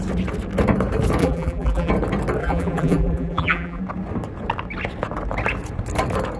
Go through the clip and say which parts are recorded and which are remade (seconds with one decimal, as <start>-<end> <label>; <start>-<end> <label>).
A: 0.0-1.2 recorded; 1.2-1.9 remade; 1.9-2.4 recorded; 2.4-3.8 remade; 3.8-6.4 recorded